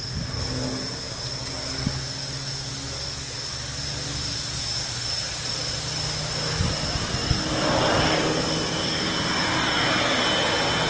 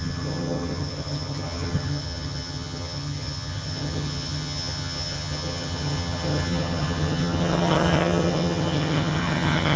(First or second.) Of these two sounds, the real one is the first